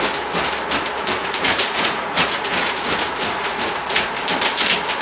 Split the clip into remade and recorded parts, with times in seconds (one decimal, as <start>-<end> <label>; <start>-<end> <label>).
0.0-1.2 recorded; 1.2-4.1 remade; 4.1-5.0 recorded